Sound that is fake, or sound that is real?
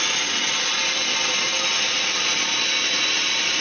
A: real